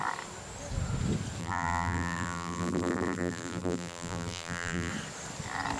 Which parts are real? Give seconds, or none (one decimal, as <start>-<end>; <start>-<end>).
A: 0.0-1.4; 4.9-5.8